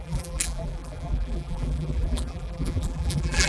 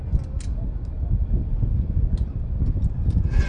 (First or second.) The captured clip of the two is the second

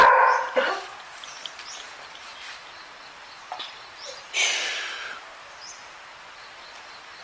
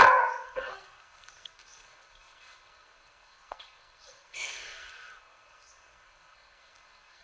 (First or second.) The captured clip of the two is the first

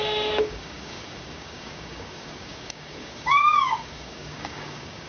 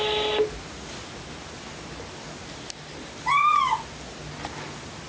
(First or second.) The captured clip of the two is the second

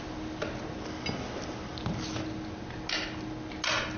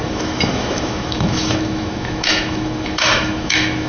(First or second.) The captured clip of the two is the first